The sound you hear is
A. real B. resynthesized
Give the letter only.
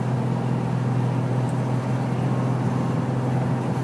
A